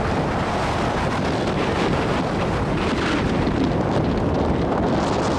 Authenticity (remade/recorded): recorded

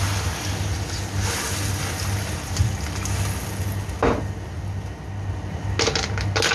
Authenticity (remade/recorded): recorded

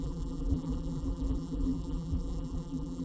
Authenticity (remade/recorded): remade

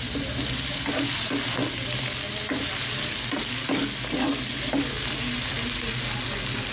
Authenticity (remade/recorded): recorded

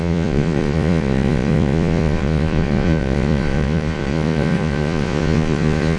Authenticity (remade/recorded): remade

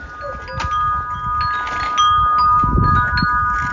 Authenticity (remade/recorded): recorded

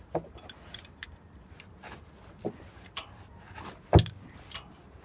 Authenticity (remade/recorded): recorded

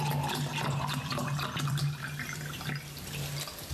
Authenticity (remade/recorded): remade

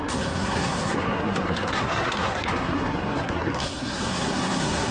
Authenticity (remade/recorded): remade